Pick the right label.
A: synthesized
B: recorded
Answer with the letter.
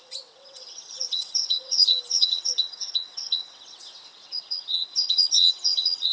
A